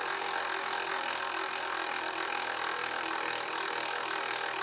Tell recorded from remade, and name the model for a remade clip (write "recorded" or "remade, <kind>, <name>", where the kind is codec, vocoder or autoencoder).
recorded